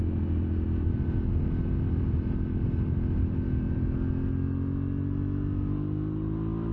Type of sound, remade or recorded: recorded